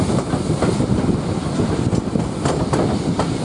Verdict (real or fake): real